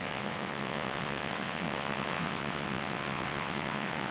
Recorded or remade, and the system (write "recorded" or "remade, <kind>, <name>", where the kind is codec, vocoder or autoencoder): remade, vocoder, WaveNeXt